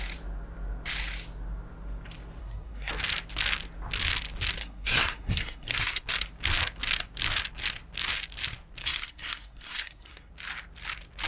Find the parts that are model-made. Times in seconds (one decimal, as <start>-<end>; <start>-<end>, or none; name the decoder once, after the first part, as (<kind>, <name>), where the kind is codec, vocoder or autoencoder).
2.4-2.9 (codec, SNAC); 4.6-6.1; 8.8-10.3